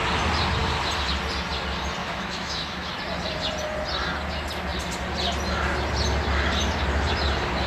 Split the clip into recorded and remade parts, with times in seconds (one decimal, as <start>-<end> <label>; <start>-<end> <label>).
0.0-2.0 recorded; 2.0-2.9 remade; 2.9-7.7 recorded